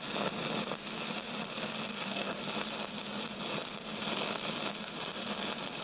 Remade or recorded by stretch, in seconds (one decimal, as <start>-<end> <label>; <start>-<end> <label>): 0.0-1.9 recorded; 1.9-2.4 remade; 2.4-5.8 recorded